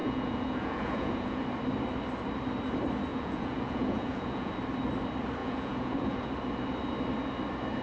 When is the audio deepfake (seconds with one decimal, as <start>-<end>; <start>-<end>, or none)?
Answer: 0.0-1.4; 3.1-4.5; 5.4-6.3

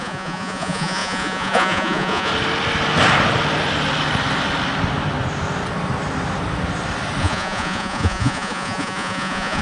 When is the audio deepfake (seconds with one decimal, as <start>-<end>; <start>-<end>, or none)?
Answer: 0.0-2.3; 7.2-9.6

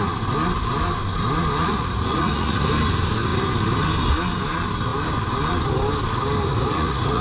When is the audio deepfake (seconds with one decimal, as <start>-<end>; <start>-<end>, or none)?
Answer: 1.6-2.7; 6.5-7.2